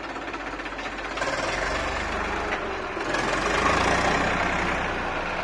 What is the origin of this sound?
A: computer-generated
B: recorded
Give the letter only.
B